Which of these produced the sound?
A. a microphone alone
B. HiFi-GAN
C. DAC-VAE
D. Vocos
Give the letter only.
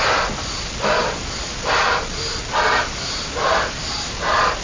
A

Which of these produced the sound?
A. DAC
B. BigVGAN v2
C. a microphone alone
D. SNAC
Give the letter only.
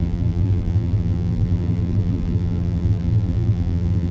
B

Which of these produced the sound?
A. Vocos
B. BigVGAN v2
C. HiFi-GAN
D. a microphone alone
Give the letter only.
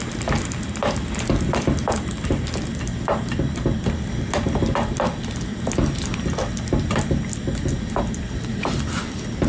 D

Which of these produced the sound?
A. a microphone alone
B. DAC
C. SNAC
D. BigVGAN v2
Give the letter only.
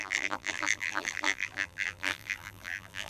D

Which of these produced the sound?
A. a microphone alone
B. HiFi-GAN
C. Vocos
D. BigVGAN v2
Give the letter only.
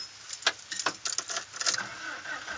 A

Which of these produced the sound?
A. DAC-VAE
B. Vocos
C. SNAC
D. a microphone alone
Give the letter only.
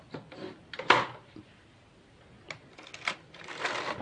D